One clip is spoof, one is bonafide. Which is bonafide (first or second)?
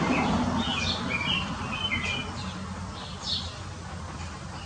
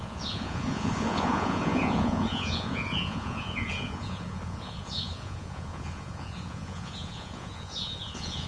first